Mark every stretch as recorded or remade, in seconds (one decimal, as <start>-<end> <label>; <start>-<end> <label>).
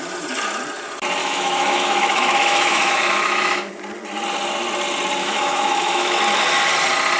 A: 0.0-1.2 recorded; 1.2-3.7 remade; 3.7-5.2 recorded; 5.2-6.2 remade; 6.2-7.2 recorded